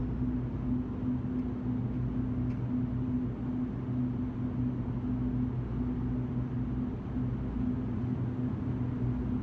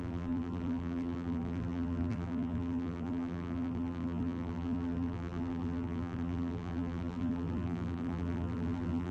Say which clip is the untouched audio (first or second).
first